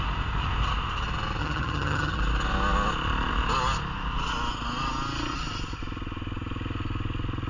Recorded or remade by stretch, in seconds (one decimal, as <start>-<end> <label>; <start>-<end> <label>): 0.0-1.4 recorded; 1.4-2.2 remade; 2.2-7.5 recorded